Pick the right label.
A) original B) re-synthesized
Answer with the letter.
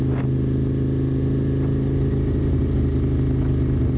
A